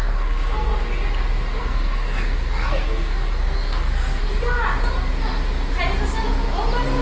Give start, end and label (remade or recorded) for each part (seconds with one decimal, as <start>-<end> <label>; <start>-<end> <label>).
0.0-0.7 remade; 0.7-1.6 recorded; 1.6-4.2 remade; 4.2-7.0 recorded